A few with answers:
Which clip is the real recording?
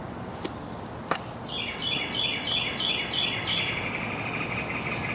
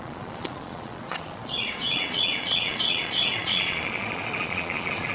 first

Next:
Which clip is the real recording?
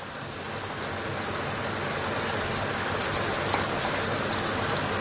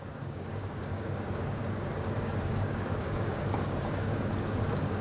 first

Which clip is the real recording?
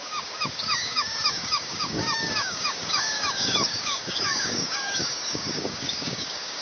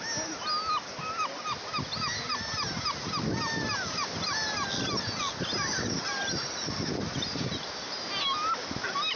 second